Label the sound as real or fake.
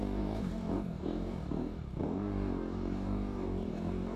fake